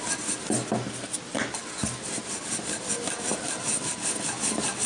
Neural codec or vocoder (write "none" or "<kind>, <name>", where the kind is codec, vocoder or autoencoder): none